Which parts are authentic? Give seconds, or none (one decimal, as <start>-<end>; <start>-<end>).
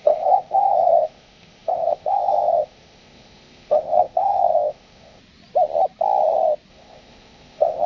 5.2-6.7